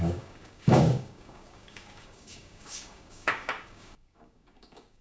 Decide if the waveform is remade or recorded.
remade